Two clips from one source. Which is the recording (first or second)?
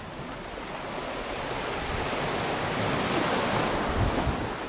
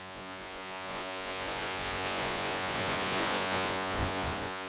first